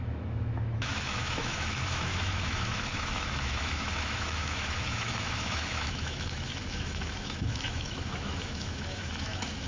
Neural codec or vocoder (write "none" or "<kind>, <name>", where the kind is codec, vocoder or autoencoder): autoencoder, DAC-VAE